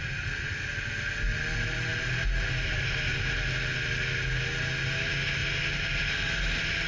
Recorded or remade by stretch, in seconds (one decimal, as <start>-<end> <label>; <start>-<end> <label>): 0.0-6.9 recorded